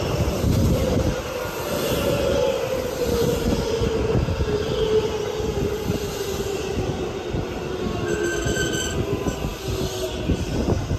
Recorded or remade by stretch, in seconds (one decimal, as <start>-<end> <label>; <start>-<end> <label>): 0.0-11.0 recorded